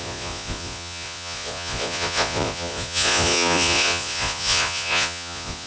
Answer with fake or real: fake